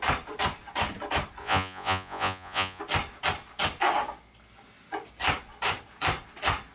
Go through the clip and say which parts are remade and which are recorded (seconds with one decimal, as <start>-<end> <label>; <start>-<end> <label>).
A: 0.0-1.4 recorded; 1.4-2.8 remade; 2.8-6.7 recorded